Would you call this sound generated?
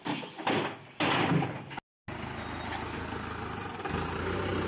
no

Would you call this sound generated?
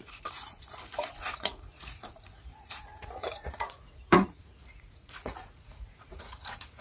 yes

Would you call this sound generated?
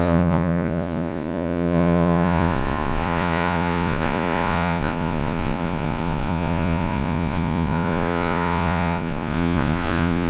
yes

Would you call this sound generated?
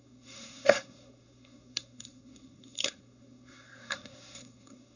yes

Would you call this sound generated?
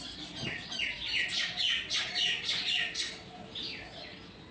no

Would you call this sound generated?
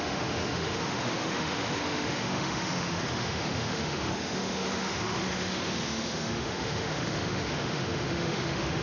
yes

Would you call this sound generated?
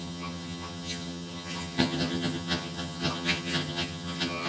yes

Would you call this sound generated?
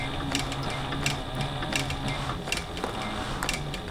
no